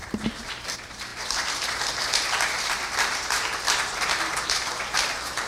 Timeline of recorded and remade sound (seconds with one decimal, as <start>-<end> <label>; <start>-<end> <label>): 0.0-5.5 remade

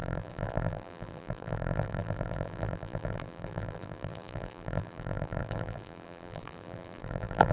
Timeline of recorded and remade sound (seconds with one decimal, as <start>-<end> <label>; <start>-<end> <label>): 0.0-7.5 remade